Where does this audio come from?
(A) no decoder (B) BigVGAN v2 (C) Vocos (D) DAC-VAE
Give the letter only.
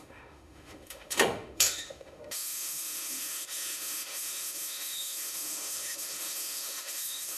D